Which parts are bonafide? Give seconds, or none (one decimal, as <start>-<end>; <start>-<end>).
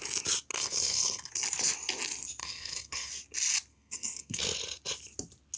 0.0-0.5; 1.3-2.4; 3.1-3.7; 4.4-5.6